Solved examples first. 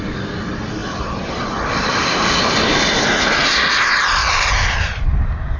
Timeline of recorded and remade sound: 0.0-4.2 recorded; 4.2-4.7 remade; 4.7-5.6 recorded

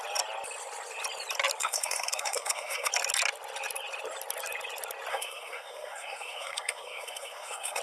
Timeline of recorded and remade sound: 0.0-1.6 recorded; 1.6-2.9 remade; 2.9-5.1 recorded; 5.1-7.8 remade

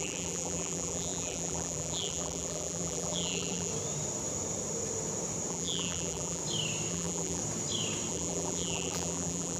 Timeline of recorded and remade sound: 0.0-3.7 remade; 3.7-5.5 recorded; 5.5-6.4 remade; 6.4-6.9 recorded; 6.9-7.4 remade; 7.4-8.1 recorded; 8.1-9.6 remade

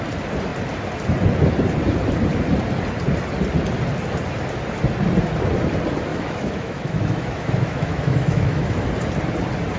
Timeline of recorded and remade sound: 0.0-6.1 recorded; 6.1-8.9 remade; 8.9-9.8 recorded